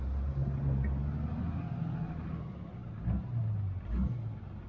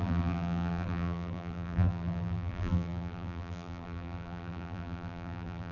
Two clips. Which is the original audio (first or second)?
first